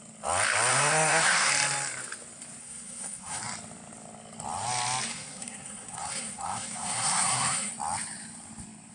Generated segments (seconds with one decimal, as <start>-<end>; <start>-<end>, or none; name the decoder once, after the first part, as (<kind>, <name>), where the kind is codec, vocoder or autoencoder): 0.7-1.5 (codec, SNAC); 2.6-3.4; 5.1-7.7